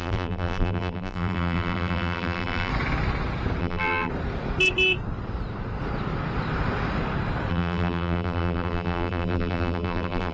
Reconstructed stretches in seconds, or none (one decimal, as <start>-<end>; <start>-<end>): 0.0-2.7; 3.6-4.1; 7.5-10.3

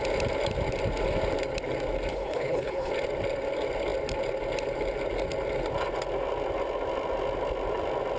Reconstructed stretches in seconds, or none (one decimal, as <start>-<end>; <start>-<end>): 2.1-2.9